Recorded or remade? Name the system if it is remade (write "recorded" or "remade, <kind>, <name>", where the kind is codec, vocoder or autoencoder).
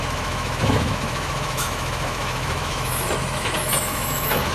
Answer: remade, autoencoder, DAC-VAE